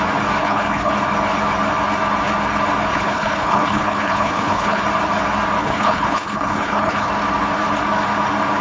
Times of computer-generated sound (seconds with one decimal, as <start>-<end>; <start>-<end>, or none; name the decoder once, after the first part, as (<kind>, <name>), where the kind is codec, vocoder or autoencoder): 0.4-0.9 (codec, HILCodec); 2.9-4.8; 5.6-7.1